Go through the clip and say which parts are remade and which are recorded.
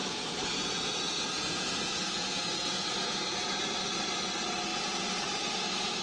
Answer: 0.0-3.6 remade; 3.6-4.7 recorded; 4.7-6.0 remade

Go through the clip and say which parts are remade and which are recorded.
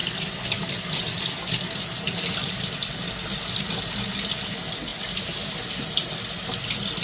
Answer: 0.0-7.0 recorded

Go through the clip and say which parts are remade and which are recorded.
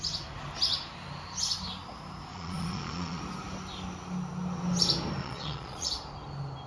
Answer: 0.0-2.3 recorded; 2.3-3.2 remade; 3.2-5.2 recorded; 5.2-5.9 remade; 5.9-6.7 recorded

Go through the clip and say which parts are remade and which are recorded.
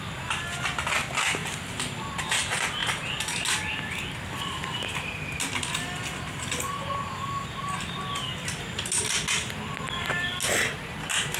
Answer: 0.0-11.4 recorded